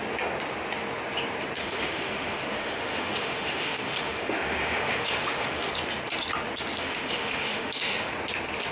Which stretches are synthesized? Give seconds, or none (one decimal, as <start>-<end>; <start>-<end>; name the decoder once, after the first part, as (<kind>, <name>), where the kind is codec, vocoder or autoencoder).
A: 1.6-5.7 (autoencoder, DAC-VAE); 6.8-8.1